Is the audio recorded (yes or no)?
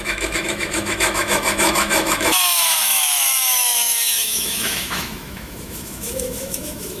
no